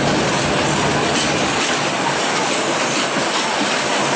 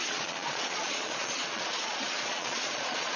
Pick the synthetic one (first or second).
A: second